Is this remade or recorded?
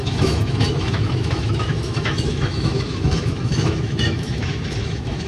remade